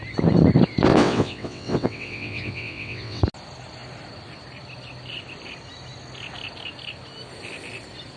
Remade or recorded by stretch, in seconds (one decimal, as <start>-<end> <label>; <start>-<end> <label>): 0.0-0.9 recorded; 0.9-3.2 remade; 3.2-8.2 recorded